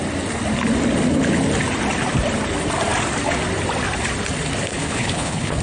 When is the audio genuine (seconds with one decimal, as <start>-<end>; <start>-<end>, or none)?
0.0-4.7